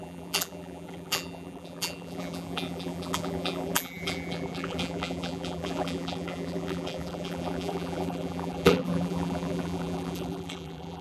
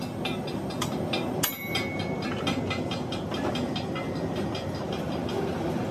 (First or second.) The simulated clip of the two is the first